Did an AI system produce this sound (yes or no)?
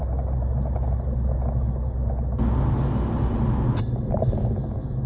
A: no